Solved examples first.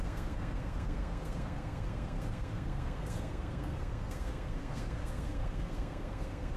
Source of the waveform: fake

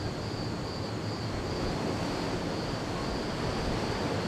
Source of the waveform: real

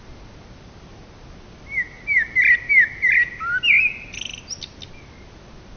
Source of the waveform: real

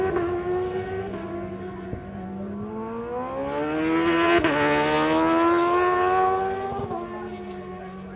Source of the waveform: real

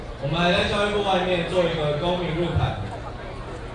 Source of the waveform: real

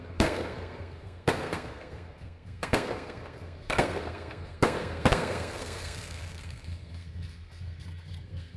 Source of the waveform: fake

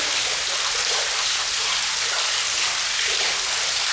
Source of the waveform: real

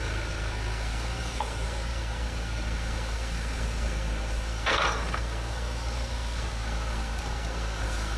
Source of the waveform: fake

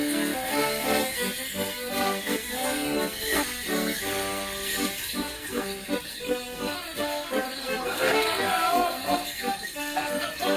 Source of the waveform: fake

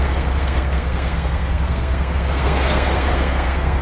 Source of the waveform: fake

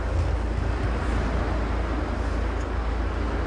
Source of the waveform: real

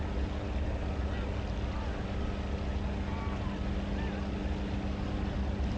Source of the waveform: real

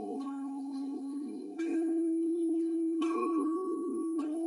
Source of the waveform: fake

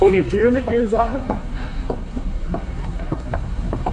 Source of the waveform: fake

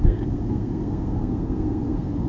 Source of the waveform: fake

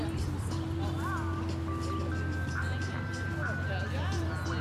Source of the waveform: real